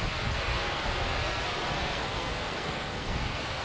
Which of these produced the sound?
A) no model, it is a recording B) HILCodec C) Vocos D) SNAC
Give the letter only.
D